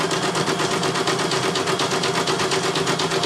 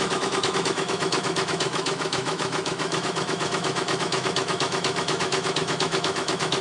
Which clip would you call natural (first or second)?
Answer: first